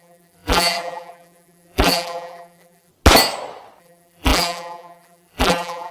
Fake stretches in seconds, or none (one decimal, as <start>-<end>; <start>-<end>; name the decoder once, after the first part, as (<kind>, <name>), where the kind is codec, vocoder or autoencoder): 0.0-2.9 (vocoder, BigVGAN v2); 3.8-5.9